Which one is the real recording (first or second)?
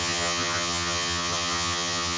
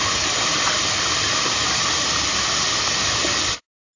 second